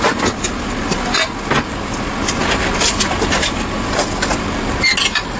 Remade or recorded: recorded